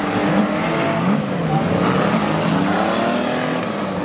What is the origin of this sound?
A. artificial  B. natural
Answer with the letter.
B